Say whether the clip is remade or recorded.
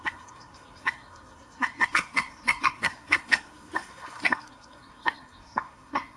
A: remade